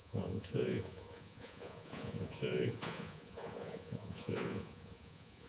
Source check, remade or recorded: remade